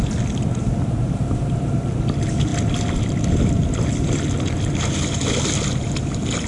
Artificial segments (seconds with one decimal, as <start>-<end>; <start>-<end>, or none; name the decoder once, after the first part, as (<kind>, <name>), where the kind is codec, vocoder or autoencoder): none